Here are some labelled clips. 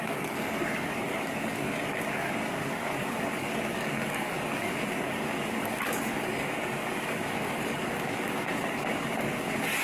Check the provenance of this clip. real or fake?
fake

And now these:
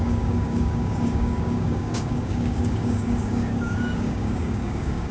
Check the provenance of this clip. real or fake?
fake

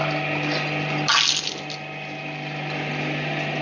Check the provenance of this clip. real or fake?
real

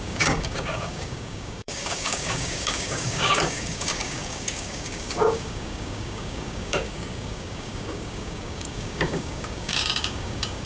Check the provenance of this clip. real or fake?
fake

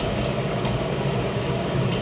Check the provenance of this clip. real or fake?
fake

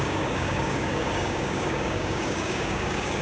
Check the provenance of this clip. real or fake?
fake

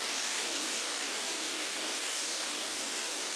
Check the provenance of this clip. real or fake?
fake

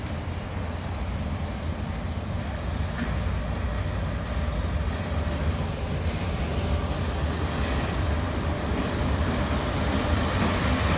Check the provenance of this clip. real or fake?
real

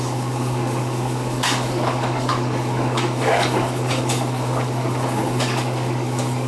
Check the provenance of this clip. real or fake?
fake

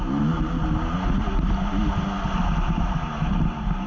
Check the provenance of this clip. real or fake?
real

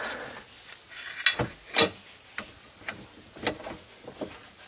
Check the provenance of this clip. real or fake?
real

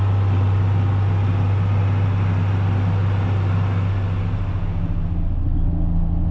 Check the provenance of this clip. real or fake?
real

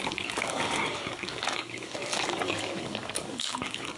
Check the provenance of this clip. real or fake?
fake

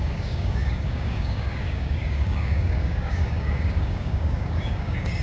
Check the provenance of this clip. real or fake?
fake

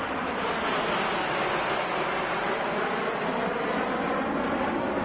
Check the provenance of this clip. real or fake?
real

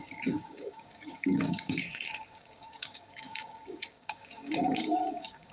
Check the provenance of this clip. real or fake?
fake